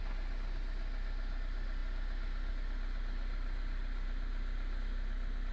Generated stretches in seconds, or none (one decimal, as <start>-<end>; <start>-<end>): none